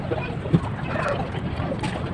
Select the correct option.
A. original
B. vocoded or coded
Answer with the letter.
A